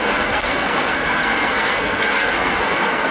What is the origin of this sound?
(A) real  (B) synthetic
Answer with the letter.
B